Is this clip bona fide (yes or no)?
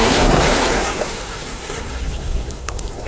no